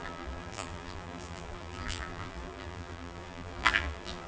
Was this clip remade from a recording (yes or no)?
yes